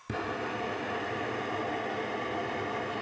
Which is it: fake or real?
real